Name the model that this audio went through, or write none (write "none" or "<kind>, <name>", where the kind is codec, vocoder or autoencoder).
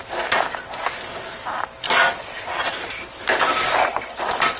none